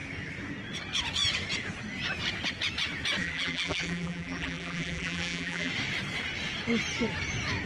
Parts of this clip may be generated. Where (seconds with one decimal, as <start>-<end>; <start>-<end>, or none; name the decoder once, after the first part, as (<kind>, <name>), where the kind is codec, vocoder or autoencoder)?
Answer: 3.2-5.7 (vocoder, BigVGAN v2)